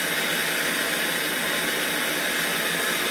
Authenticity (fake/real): real